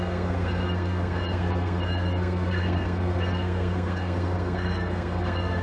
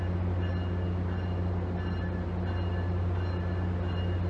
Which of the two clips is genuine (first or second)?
second